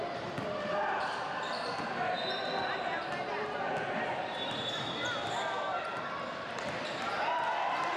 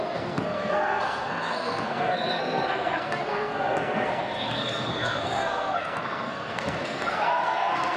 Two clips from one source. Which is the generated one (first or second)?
second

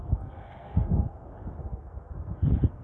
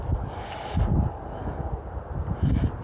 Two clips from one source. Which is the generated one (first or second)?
first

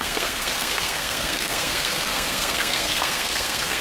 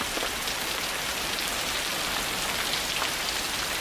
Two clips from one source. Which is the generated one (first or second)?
first